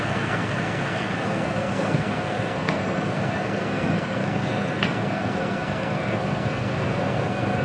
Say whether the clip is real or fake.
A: fake